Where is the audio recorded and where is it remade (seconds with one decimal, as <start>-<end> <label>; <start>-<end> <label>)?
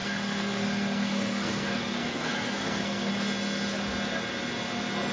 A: 0.0-3.1 remade; 3.1-5.1 recorded